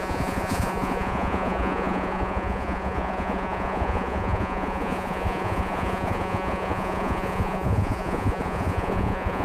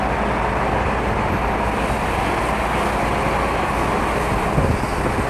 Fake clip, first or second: first